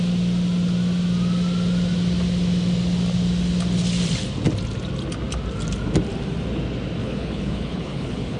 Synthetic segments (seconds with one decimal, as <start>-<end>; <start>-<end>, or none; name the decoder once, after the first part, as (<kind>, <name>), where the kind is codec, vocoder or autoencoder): 7.0-8.4 (codec, HILCodec)